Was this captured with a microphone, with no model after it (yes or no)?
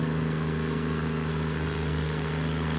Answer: no